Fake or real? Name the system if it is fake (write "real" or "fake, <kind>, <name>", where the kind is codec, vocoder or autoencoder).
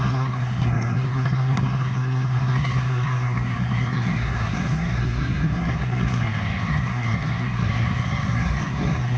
fake, codec, SNAC